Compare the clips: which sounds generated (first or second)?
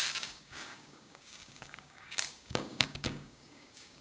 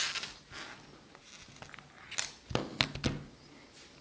first